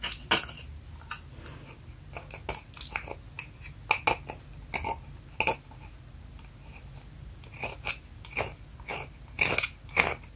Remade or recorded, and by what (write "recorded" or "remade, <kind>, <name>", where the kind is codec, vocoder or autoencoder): recorded